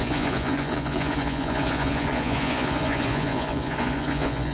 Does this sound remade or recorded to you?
remade